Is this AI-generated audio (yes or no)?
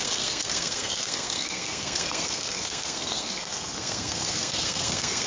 yes